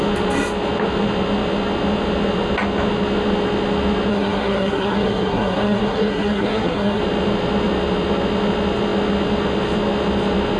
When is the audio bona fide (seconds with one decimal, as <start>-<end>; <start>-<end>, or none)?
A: 0.0-4.1; 7.0-10.6